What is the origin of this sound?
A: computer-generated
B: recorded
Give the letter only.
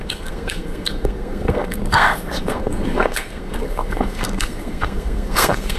A